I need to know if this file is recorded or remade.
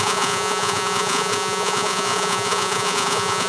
remade